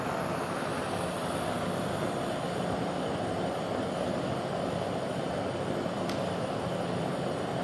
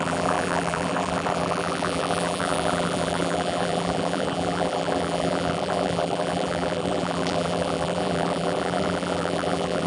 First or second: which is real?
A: first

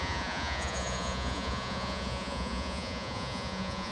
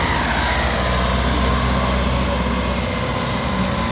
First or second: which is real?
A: second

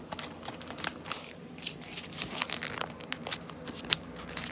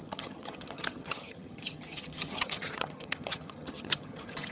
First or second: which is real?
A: first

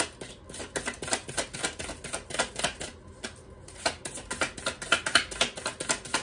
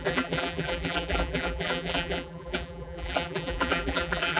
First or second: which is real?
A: first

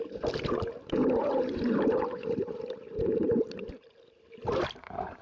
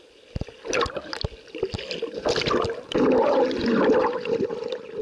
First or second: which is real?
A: second